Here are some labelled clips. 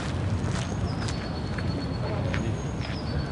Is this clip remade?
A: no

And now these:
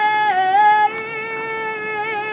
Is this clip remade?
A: no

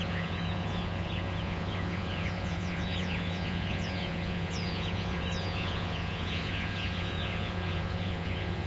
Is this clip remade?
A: yes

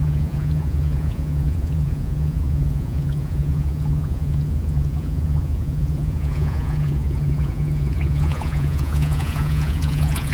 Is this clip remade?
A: yes